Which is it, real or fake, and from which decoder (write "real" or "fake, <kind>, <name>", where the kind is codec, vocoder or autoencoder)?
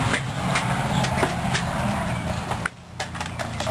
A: real